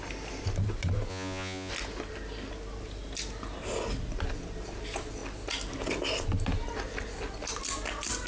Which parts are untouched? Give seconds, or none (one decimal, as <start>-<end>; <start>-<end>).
0.0-1.1; 1.7-8.3